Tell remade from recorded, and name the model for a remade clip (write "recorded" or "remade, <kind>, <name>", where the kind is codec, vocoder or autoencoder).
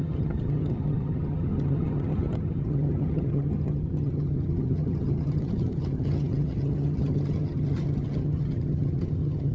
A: remade, vocoder, HiFi-GAN